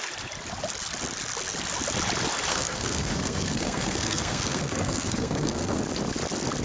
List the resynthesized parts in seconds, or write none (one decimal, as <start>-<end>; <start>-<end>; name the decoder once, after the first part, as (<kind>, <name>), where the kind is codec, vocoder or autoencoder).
2.5-5.8 (codec, SNAC)